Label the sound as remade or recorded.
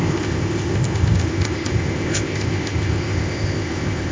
remade